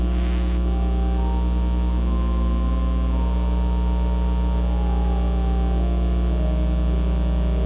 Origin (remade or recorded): recorded